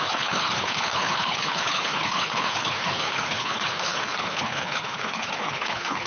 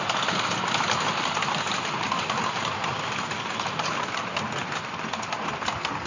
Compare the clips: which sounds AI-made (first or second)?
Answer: first